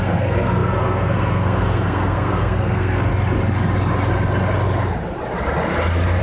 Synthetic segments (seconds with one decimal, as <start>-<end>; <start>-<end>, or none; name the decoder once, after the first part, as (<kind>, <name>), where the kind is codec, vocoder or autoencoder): 0.0-3.1 (codec, SNAC)